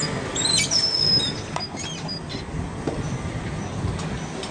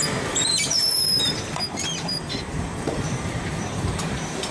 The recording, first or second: first